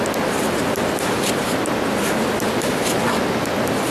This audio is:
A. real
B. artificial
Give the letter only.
A